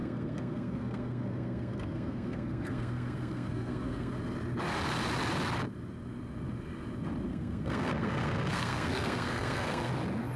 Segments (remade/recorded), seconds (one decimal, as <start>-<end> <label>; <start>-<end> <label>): 0.0-4.1 remade; 4.1-7.3 recorded; 7.3-9.9 remade; 9.9-10.4 recorded